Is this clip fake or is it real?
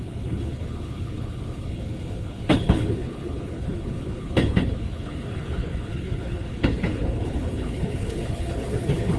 fake